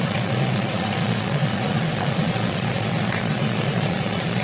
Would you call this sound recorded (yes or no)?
no